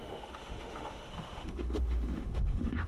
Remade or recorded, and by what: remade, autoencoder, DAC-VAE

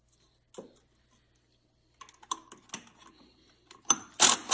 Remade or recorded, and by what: recorded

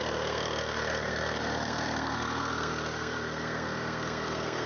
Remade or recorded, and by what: remade, codec, SNAC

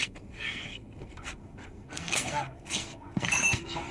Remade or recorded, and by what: remade, codec, SNAC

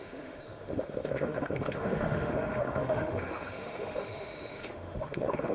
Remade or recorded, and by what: remade, autoencoder, DAC-VAE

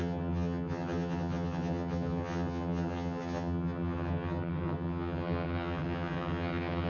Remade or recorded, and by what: remade, vocoder, HiFi-GAN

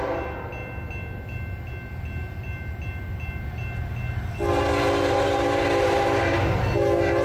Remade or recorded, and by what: recorded